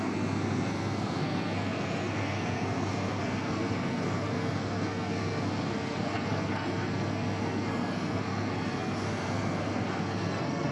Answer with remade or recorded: remade